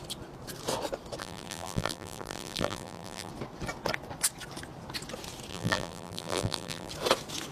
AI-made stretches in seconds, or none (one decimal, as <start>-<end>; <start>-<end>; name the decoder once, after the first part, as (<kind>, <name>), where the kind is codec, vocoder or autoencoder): 1.2-3.3 (vocoder, BigVGAN v2); 5.5-6.9